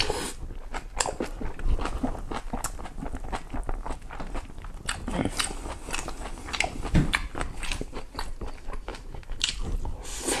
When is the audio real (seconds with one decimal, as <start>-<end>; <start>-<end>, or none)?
0.0-7.2; 8.2-8.9; 9.8-10.4